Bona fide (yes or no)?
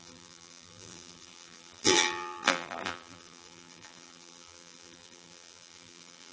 no